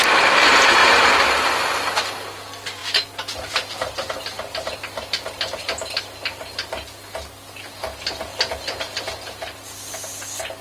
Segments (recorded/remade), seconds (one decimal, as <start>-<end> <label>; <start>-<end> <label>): 0.0-10.6 recorded